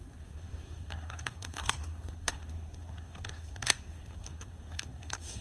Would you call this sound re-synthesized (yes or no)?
yes